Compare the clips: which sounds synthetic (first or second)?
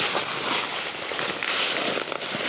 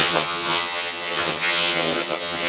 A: second